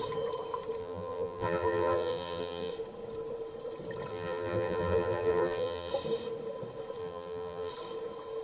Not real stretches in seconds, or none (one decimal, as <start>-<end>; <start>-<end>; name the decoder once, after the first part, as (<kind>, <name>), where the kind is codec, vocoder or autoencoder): 0.8-2.7 (vocoder, BigVGAN v2); 4.1-5.9; 7.0-7.7